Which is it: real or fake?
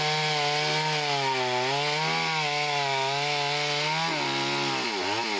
real